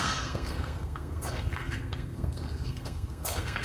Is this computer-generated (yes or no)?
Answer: yes